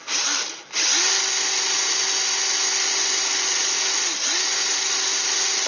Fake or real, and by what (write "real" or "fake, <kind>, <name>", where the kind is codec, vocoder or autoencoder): real